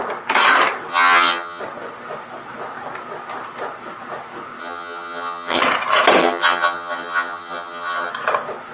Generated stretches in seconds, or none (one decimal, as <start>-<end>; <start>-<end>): 0.9-1.6; 4.6-5.6; 6.2-8.1